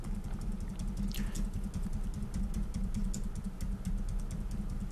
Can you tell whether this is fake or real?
real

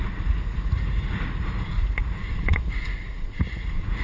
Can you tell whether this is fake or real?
fake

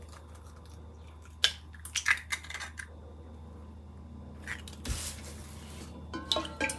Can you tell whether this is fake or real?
real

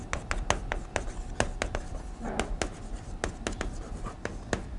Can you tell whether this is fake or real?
real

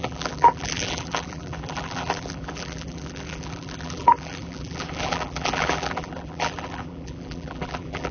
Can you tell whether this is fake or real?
fake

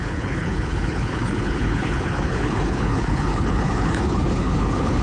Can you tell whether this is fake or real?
fake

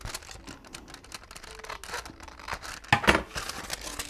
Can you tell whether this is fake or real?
real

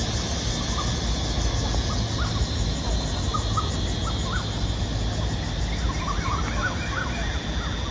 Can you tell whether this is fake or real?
real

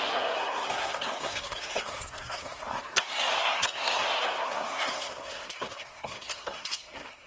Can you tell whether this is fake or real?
fake